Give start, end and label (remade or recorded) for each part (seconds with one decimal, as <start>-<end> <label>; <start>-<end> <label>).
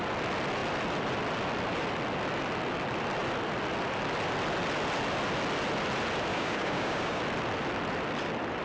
0.0-6.3 recorded; 6.3-7.2 remade; 7.2-8.6 recorded